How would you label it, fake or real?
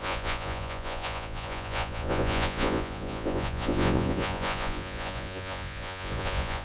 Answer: fake